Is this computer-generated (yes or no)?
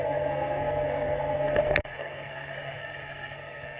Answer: yes